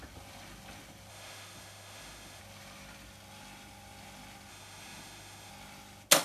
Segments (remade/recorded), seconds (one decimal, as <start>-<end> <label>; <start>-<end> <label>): 0.0-1.1 recorded; 1.1-2.4 remade; 2.4-4.5 recorded; 4.5-5.5 remade; 5.5-6.2 recorded